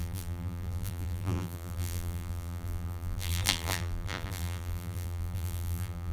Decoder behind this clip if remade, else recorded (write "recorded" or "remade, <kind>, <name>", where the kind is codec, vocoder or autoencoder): remade, vocoder, BigVGAN v2